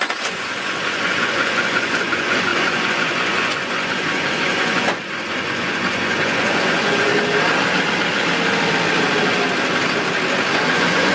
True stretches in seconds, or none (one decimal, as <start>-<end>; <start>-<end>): 7.1-10.6